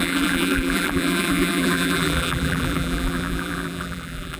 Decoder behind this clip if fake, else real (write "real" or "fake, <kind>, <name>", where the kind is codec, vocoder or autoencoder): fake, vocoder, BigVGAN v2